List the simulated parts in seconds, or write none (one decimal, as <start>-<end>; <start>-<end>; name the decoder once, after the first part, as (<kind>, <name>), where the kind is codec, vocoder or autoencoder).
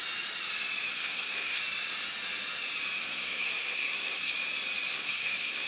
0.9-1.6 (codec, SNAC); 3.0-4.3; 4.9-5.7